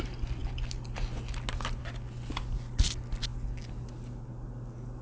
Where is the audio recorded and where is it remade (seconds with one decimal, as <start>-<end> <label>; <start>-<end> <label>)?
0.0-5.0 recorded